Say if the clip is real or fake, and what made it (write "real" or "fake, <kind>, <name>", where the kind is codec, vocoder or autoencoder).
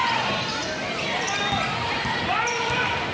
real